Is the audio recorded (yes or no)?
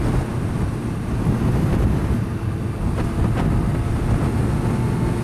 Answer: yes